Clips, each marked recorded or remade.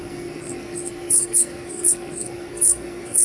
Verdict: remade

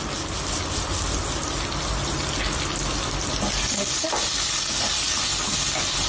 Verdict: recorded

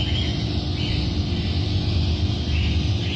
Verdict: recorded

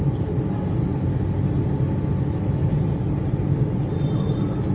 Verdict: recorded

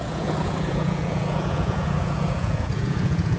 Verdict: remade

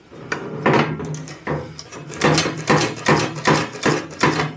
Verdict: recorded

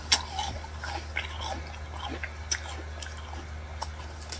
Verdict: recorded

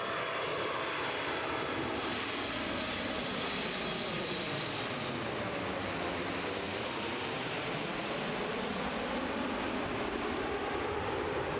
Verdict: recorded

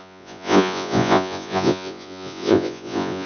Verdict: remade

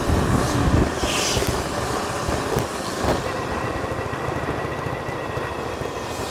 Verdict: recorded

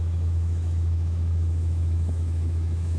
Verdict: remade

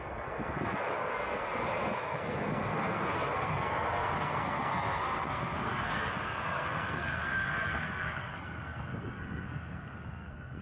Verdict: remade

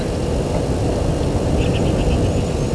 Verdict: recorded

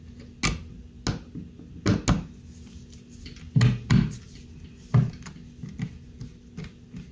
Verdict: recorded